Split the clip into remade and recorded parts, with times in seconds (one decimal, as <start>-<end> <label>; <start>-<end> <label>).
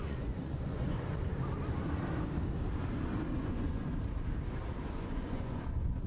0.0-1.3 remade; 1.3-3.4 recorded; 3.4-3.9 remade; 3.9-4.9 recorded; 4.9-6.1 remade